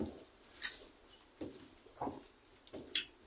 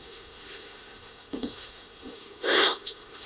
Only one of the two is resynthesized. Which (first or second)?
second